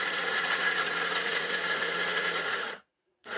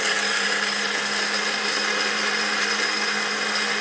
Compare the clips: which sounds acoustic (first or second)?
second